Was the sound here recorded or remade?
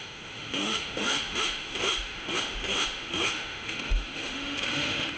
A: remade